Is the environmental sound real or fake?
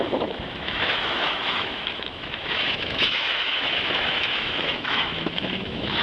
fake